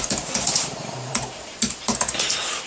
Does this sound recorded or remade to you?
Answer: remade